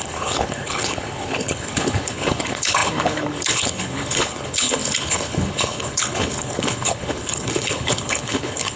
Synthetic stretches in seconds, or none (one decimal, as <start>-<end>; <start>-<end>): 0.0-8.8